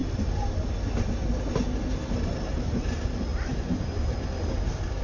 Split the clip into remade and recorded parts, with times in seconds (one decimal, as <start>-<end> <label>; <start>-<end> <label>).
0.0-3.3 recorded; 3.3-4.2 remade; 4.2-5.0 recorded